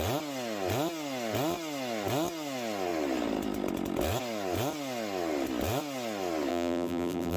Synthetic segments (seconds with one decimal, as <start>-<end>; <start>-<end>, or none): 6.5-7.4

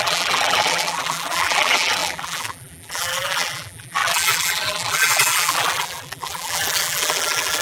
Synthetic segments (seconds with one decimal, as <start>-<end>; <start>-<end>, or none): 0.0-7.6

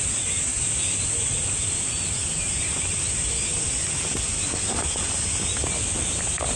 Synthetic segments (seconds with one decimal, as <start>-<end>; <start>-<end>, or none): none

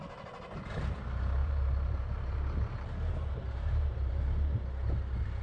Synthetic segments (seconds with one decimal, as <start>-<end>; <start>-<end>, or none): 1.4-4.6

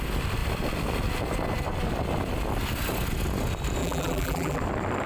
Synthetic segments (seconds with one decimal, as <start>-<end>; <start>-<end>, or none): 3.8-4.6

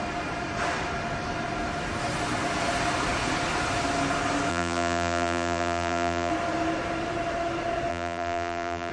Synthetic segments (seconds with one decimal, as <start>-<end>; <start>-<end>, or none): 4.5-6.3; 7.9-8.9

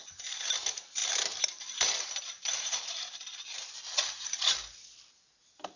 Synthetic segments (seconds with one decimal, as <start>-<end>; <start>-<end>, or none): 1.0-3.7